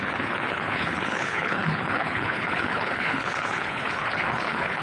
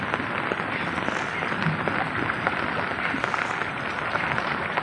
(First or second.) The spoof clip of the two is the first